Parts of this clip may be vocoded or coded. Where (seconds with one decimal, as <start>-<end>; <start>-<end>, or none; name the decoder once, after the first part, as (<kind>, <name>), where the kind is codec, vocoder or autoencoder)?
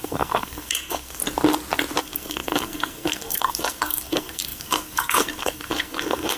0.0-1.2 (codec, SNAC); 2.0-6.4